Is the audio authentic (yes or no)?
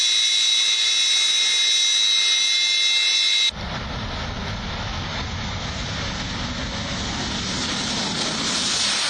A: yes